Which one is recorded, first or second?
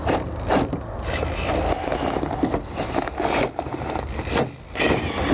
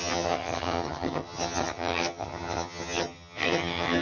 first